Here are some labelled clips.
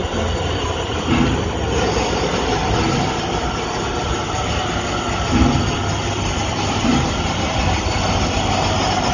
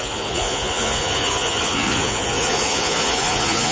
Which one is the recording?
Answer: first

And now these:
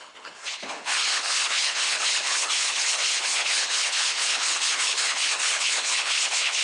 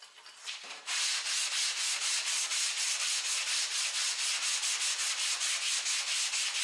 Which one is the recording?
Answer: second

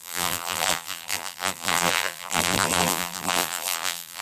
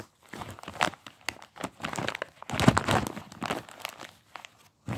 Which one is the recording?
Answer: second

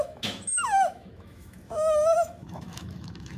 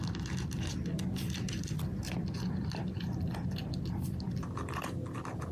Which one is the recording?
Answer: second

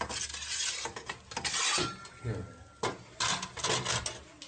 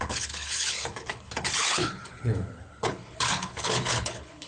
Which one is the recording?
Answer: first